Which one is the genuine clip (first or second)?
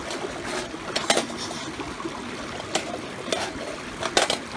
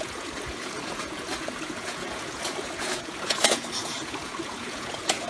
first